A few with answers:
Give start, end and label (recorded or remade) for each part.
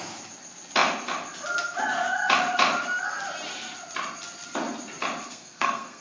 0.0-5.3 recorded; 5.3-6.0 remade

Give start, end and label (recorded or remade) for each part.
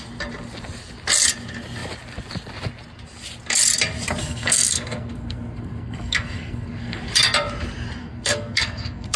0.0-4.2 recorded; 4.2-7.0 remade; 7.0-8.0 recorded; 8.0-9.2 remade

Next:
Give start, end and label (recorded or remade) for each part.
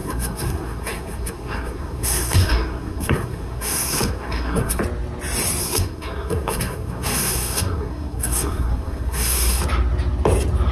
0.0-4.8 remade; 4.8-5.6 recorded; 5.6-9.6 remade; 9.6-10.7 recorded